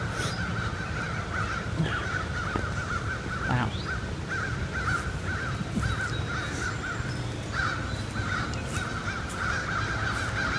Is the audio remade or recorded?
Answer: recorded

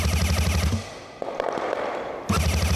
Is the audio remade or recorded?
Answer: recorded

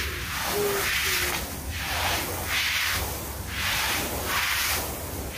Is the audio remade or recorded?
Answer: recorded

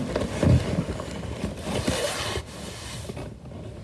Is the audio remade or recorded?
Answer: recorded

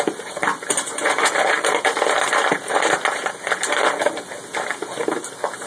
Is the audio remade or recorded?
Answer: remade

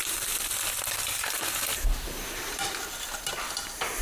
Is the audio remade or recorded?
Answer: remade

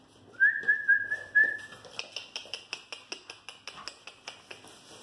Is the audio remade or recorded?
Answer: recorded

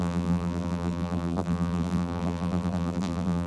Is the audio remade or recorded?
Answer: remade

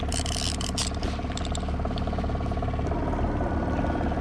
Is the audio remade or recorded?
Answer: recorded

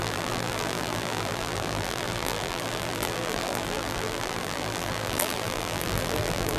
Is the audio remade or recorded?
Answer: remade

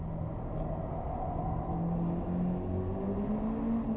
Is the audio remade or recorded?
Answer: recorded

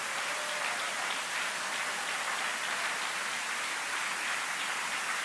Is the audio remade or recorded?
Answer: recorded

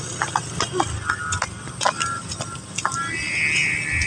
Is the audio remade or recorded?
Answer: recorded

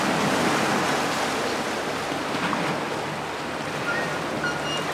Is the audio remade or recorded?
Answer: recorded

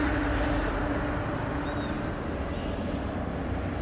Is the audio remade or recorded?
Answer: recorded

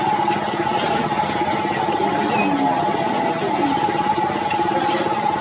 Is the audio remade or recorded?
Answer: recorded